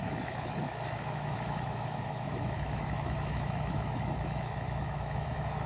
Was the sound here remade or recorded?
remade